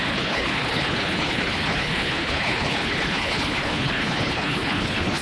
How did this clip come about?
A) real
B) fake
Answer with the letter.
B